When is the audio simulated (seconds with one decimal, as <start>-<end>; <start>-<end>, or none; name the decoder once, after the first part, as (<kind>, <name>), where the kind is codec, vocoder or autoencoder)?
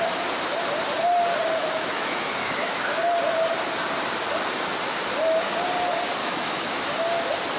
1.6-2.8 (autoencoder, DAC-VAE); 6.2-6.8